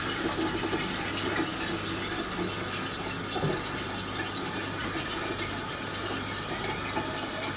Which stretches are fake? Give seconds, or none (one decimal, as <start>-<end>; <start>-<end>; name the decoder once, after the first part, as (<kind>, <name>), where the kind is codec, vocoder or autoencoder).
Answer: 4.8-5.9 (vocoder, BigVGAN v2)